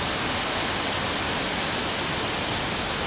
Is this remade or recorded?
recorded